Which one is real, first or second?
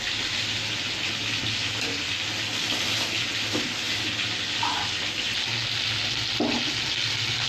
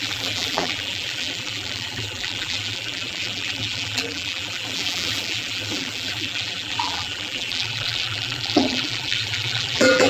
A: first